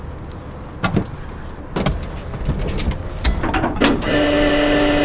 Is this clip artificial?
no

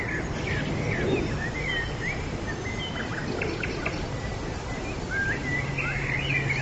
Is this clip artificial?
no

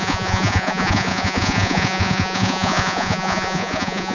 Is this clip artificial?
yes